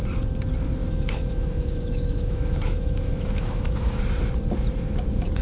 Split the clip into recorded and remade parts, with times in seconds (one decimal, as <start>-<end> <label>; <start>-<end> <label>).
0.0-0.8 recorded; 0.8-4.0 remade; 4.0-5.4 recorded